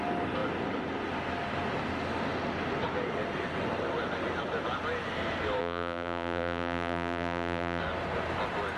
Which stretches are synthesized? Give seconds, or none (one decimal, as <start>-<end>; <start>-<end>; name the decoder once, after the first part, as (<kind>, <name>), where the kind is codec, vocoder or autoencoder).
5.6-7.8 (vocoder, BigVGAN v2)